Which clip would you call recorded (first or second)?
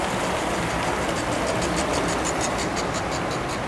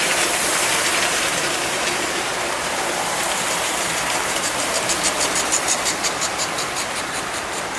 first